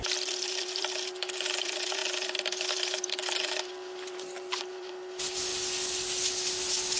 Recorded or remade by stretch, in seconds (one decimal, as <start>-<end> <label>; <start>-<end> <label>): 0.0-7.0 remade